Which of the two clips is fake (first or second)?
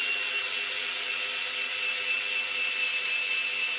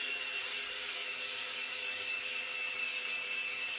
second